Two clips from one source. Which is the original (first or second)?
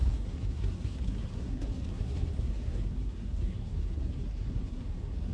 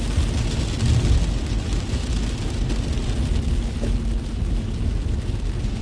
second